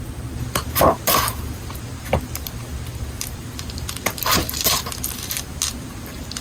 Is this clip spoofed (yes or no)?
yes